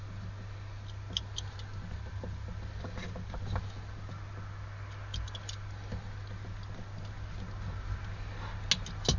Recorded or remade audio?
recorded